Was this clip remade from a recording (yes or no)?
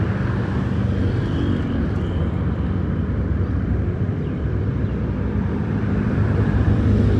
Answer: yes